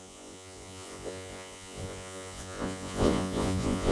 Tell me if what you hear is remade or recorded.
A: remade